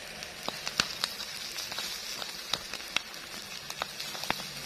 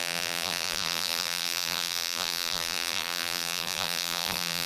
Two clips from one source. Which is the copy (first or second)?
second